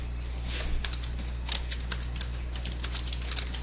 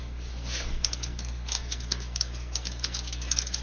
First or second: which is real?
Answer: first